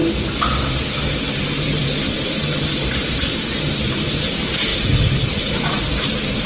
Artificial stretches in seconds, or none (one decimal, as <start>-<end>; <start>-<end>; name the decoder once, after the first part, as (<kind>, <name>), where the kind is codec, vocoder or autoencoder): 1.4-6.5 (vocoder, BigVGAN v2)